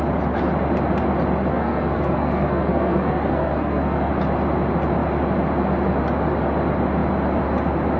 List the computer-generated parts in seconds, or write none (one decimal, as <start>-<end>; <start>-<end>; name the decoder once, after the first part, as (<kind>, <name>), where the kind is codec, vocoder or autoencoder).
1.5-4.1 (codec, SNAC)